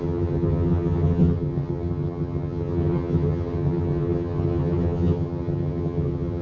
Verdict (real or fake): fake